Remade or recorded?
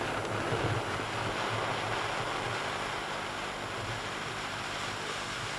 recorded